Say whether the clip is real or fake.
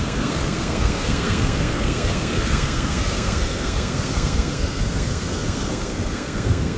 fake